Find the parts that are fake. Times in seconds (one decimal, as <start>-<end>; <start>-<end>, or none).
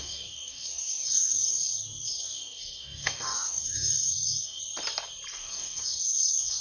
0.0-4.6; 5.3-6.6